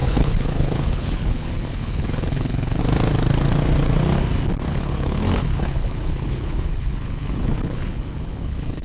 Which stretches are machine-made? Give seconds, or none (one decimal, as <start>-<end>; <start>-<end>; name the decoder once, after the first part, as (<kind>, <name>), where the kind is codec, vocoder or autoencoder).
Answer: 0.0-2.8 (codec, HILCodec); 4.7-8.8